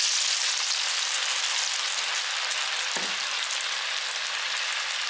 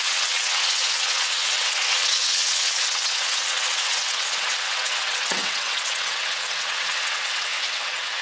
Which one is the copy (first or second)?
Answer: second